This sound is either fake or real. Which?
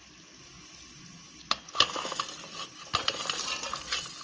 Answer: real